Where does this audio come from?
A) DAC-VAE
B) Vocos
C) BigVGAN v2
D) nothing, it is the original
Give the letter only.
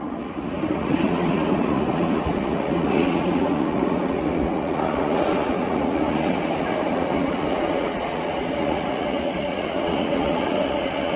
B